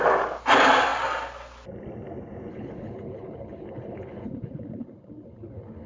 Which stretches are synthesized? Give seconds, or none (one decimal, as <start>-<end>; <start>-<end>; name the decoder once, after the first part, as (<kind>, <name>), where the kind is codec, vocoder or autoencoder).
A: 2.5-5.9 (codec, HILCodec)